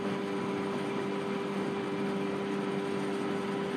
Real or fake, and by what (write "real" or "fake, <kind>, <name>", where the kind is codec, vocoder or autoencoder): real